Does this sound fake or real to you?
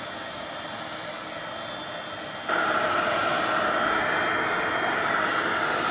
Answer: real